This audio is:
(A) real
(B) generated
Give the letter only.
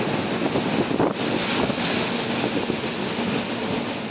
A